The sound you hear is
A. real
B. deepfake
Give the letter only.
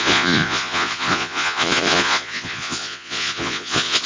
B